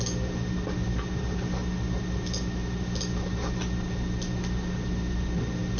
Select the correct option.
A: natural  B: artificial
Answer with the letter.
A